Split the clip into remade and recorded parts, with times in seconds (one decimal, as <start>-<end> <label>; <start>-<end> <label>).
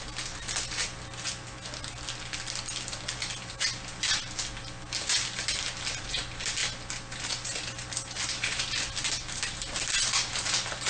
0.0-10.9 recorded